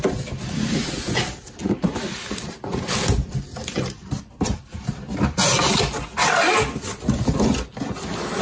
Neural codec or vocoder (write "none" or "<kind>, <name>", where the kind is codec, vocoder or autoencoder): none